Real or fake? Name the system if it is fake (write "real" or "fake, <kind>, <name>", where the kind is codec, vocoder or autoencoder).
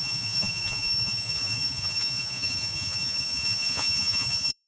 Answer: fake, vocoder, Vocos